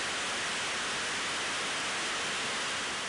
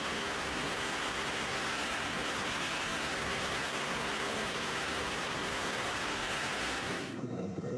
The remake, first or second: second